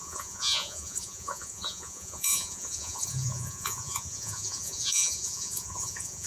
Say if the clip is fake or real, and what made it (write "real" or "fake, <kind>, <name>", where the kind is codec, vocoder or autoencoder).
fake, vocoder, Vocos